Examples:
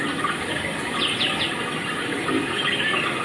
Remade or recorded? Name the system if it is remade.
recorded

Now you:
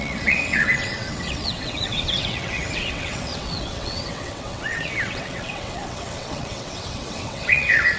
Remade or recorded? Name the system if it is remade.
remade, vocoder, WaveNeXt